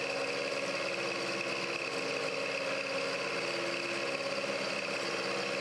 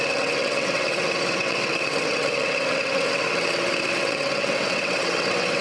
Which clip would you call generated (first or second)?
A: second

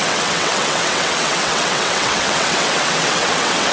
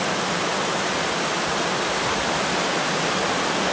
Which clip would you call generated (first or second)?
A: first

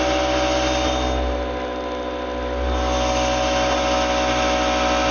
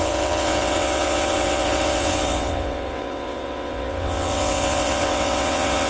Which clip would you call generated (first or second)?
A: second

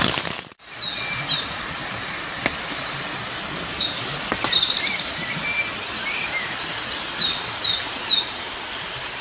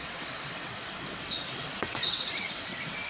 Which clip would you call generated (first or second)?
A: second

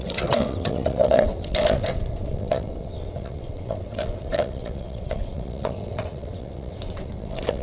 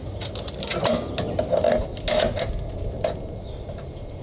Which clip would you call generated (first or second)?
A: first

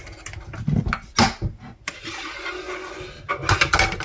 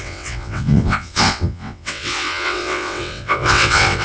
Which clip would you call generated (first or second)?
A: second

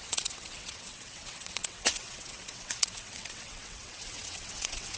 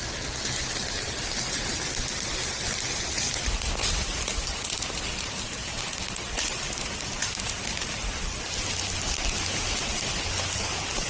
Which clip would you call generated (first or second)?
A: first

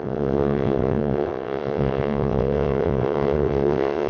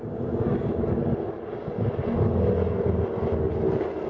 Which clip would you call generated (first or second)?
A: first